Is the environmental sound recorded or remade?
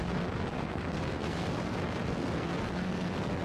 remade